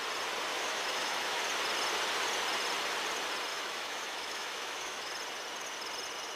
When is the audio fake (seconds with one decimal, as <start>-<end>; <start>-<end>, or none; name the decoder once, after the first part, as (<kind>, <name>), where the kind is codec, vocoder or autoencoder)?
0.5-1.4 (autoencoder, DAC-VAE); 3.5-5.1